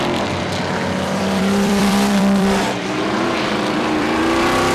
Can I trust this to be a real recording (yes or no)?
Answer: no